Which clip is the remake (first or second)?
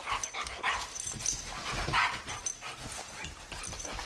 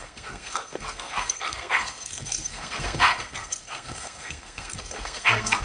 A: second